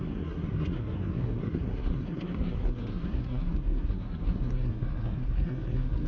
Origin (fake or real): fake